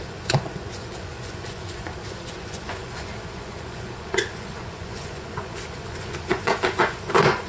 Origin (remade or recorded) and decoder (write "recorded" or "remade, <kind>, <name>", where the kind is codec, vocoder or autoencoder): remade, vocoder, Vocos